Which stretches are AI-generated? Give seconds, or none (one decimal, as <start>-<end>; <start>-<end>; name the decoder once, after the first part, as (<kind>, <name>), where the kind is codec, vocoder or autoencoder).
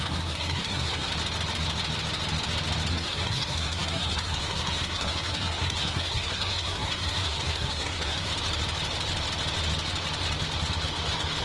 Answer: 0.0-1.1 (codec, SNAC); 2.9-8.3